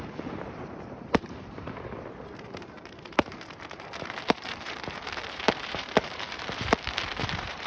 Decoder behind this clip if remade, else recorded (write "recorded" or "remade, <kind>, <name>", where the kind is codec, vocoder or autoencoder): remade, vocoder, BigVGAN v2